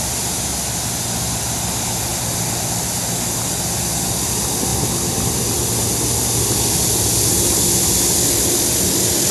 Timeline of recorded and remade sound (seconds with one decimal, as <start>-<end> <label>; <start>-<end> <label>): 0.0-2.1 recorded; 2.1-3.0 remade; 3.0-9.3 recorded

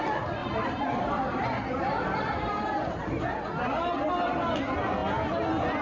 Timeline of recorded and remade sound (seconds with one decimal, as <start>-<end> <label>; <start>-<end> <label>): 0.0-0.4 recorded; 0.4-3.2 remade; 3.2-5.8 recorded

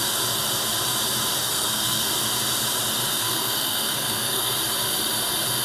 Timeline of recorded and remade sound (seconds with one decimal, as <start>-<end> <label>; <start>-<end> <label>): 0.0-1.4 recorded; 1.4-2.1 remade; 2.1-3.1 recorded; 3.1-4.5 remade; 4.5-5.6 recorded